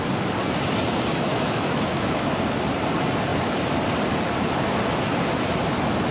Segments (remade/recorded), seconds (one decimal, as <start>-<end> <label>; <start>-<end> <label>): 0.0-1.3 recorded; 1.3-2.4 remade; 2.4-6.1 recorded